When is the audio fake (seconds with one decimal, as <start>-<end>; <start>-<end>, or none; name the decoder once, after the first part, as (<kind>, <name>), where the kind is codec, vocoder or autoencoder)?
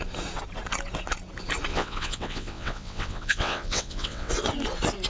1.7-4.3 (vocoder, WaveNeXt)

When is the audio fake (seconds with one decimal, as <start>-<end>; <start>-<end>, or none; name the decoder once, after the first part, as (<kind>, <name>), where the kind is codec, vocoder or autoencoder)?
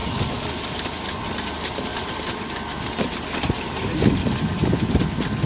1.9-4.0 (vocoder, BigVGAN v2)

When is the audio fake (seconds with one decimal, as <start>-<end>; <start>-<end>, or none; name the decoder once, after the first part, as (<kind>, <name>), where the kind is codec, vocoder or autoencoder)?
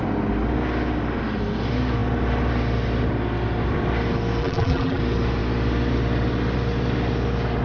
4.4-5.0 (vocoder, BigVGAN v2)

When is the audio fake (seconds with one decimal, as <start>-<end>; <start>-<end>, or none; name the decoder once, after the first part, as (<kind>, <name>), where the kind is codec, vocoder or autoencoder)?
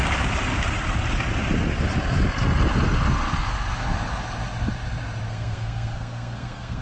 5.3-6.8 (codec, SNAC)